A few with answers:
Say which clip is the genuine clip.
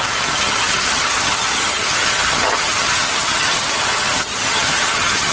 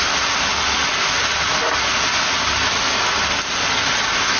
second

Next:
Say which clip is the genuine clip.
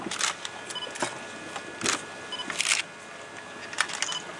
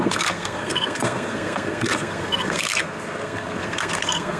first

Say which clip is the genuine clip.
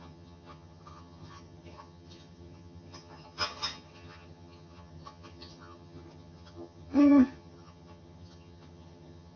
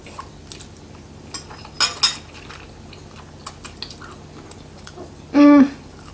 second